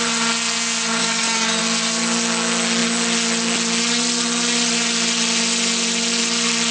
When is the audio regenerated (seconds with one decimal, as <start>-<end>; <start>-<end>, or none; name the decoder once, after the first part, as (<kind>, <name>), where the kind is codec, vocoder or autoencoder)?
1.0-1.6 (codec, DAC)